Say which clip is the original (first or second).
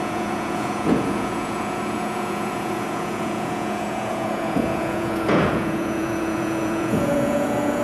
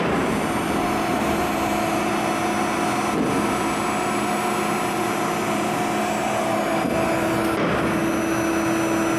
second